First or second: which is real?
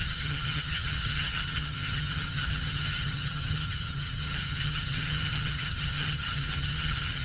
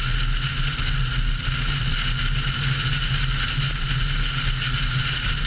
second